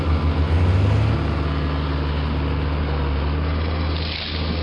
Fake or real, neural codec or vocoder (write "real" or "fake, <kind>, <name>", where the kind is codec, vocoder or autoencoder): real